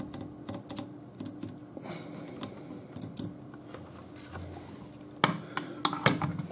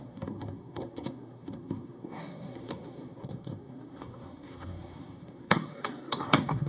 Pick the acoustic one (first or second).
first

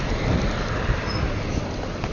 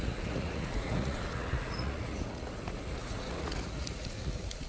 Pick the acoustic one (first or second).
first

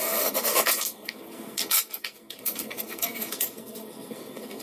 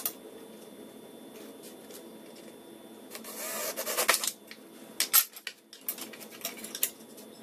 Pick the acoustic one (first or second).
second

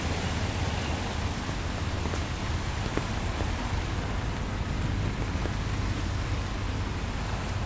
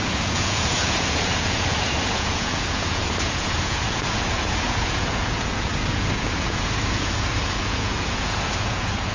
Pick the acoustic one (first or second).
first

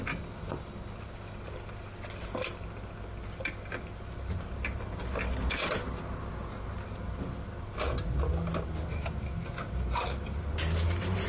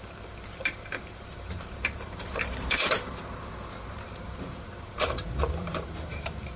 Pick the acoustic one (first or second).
first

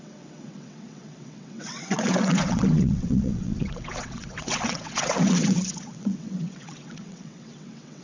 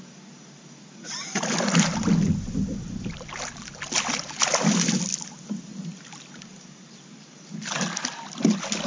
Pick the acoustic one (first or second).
second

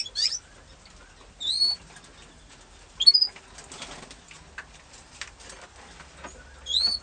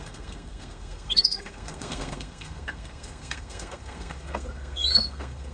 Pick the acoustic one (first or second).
first